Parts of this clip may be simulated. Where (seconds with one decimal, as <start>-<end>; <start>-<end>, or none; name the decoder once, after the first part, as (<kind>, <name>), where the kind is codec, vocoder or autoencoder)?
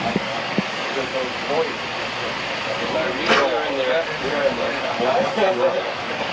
0.0-1.1 (codec, DAC); 4.2-6.3